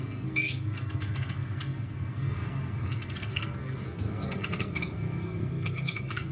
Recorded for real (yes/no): no